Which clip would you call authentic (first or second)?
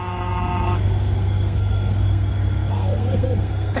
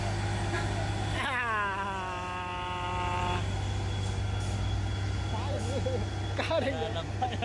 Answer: second